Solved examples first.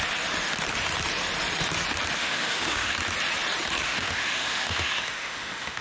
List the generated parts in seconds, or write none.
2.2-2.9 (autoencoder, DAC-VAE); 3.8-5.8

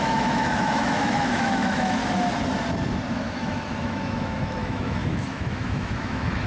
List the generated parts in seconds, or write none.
0.0-2.0 (autoencoder, DAC-VAE); 3.1-6.5

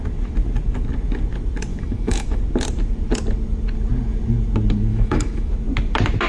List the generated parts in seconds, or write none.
1.7-2.4 (autoencoder, DAC-VAE); 4.9-5.5

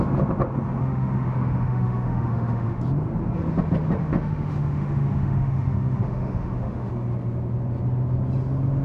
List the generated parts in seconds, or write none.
0.8-2.8 (autoencoder, DAC-VAE); 4.0-6.9

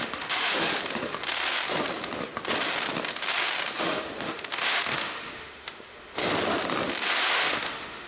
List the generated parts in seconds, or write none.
0.0-0.8 (autoencoder, DAC-VAE); 3.8-6.2; 7.3-8.1

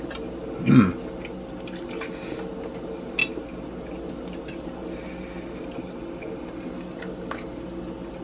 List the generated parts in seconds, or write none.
none

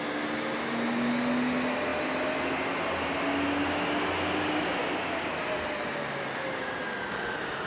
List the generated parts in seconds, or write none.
none